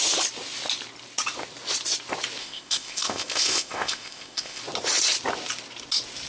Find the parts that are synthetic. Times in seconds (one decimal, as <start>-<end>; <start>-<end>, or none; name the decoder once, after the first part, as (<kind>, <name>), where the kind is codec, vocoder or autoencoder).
2.4-4.6 (codec, ZipCodec)